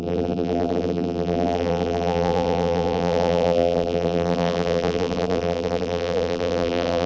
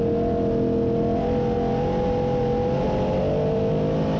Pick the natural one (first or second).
second